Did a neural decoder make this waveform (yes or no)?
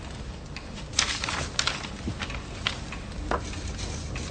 no